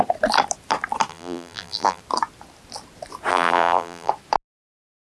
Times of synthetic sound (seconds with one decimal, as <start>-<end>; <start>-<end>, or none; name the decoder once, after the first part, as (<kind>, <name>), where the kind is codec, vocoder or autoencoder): 1.1-2.0 (vocoder, BigVGAN v2); 3.3-4.1